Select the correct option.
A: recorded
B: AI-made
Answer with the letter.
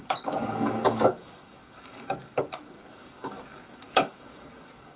B